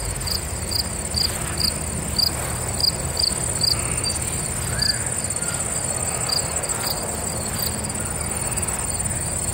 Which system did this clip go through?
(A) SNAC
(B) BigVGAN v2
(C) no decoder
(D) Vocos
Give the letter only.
C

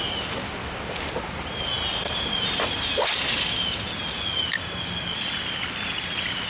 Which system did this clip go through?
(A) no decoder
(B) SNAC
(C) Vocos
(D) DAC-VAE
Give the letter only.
A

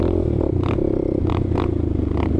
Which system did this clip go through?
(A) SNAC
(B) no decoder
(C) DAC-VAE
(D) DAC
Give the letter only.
B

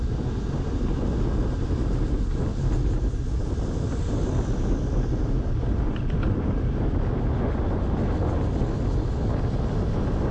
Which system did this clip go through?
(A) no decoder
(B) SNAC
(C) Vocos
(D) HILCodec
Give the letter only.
A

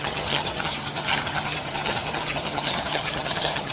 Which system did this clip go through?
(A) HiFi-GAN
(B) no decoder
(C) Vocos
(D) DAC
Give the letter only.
A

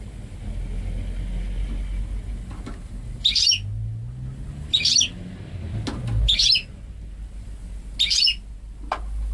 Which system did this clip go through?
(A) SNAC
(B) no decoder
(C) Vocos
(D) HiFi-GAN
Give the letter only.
B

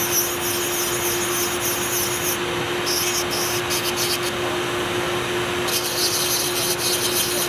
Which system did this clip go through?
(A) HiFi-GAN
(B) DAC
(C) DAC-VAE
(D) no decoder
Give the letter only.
D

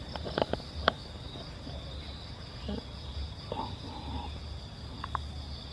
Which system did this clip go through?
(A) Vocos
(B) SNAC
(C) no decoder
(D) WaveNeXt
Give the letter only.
C